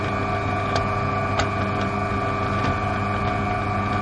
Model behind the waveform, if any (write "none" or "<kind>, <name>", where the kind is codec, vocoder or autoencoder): none